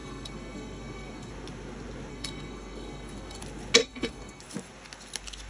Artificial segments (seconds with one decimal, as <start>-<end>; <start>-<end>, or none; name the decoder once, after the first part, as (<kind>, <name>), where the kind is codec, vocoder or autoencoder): 0.0-1.3 (codec, SNAC); 2.1-3.4; 3.8-4.4